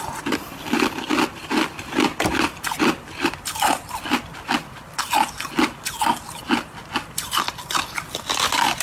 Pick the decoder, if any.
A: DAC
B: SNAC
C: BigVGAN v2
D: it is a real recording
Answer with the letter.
D